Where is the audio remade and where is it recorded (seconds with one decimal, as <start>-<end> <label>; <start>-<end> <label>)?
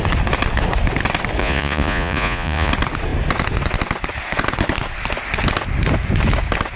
0.0-1.4 recorded; 1.4-2.7 remade; 2.7-6.8 recorded